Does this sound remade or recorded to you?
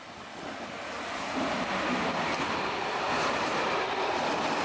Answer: recorded